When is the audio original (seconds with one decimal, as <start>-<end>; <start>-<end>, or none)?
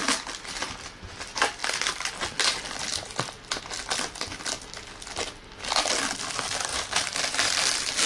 0.0-6.7; 7.5-8.1